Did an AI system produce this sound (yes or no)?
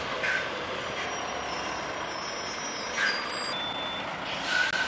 no